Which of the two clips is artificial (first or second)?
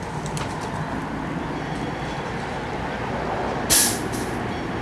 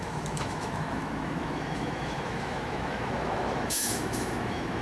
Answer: second